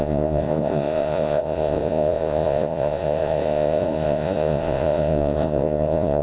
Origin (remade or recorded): remade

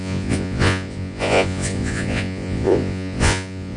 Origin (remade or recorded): remade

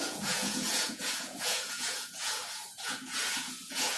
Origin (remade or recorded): remade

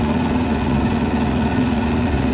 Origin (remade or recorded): remade